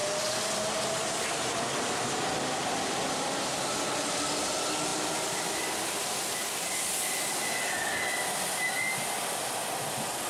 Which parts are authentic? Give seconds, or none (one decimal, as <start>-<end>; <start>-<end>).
0.0-10.3